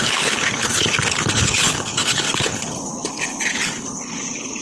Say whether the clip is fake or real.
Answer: fake